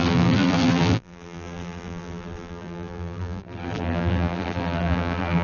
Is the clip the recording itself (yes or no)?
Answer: no